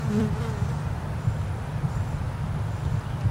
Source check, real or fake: real